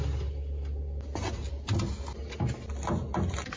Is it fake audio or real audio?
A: real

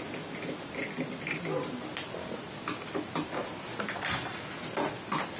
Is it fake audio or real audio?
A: real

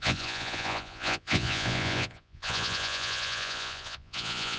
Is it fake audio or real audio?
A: fake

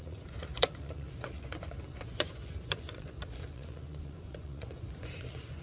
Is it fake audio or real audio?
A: fake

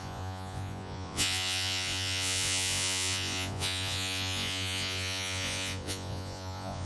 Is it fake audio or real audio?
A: fake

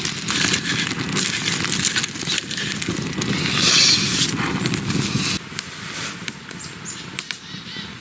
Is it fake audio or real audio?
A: real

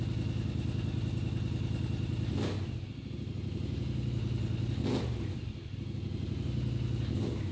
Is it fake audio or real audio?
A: real